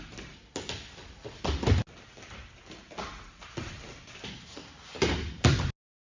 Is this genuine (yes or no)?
yes